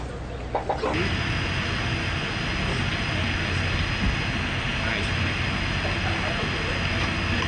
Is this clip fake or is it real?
real